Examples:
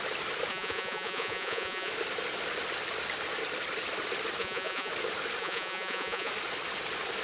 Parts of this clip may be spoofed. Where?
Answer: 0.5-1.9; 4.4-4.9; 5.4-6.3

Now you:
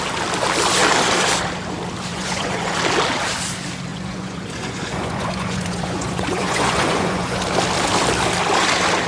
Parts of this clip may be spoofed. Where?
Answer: 2.1-2.8; 3.9-7.4

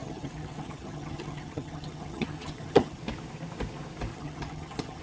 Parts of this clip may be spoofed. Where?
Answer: 0.0-3.0; 4.1-5.0

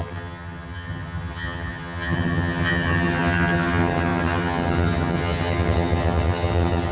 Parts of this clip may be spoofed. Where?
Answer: 0.0-6.9

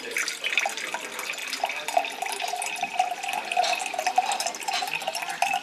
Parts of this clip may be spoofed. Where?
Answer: none

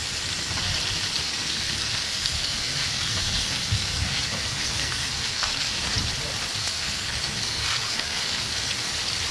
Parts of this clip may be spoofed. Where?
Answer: 1.2-5.8; 6.6-8.9

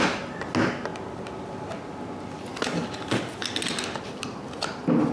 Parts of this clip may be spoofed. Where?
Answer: none

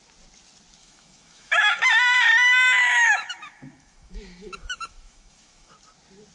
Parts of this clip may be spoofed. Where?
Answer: 0.8-1.9; 2.8-5.7